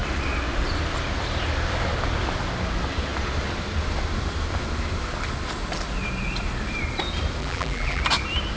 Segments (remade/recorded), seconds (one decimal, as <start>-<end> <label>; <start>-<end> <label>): 0.0-7.4 recorded; 7.4-8.0 remade; 8.0-8.6 recorded